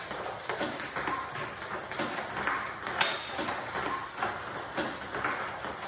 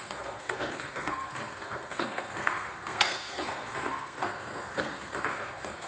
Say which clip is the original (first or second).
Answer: first